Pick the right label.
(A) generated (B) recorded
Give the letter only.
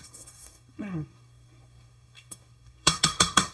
A